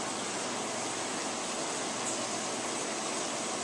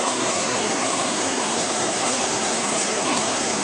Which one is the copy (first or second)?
second